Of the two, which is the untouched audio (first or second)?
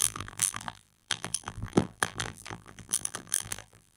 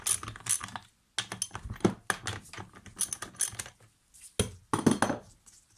second